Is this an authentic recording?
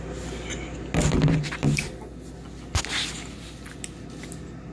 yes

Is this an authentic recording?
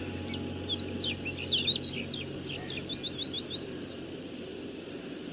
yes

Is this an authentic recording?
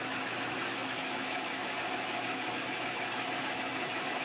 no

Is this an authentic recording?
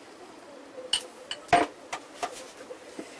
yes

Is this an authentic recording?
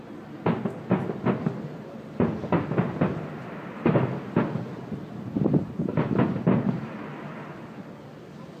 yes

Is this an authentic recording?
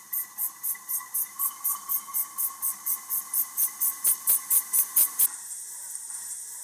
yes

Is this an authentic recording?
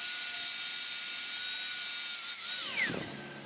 yes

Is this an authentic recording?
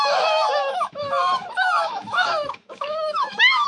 no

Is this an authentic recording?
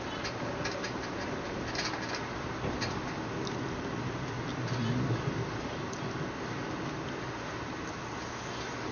yes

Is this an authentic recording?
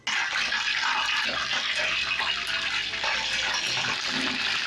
yes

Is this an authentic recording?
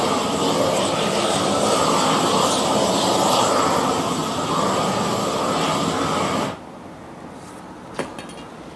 yes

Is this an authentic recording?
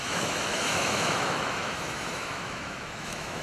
no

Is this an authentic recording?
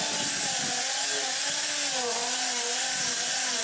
yes